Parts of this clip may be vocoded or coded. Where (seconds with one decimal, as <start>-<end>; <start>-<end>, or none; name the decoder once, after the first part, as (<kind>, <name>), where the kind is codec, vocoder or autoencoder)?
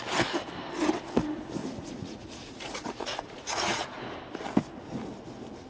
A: 1.6-4.0 (vocoder, Vocos)